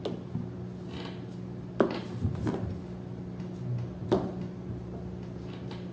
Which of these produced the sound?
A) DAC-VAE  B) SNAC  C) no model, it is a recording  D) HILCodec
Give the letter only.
C